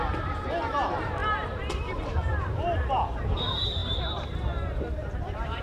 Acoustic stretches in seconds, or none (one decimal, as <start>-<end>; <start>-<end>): none